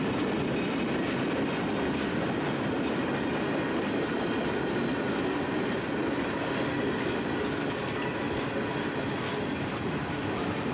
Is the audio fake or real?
real